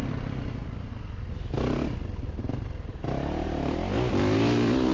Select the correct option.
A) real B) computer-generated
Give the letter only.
A